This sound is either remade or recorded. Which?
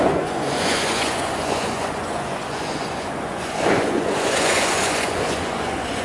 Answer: remade